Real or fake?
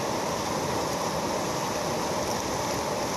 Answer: real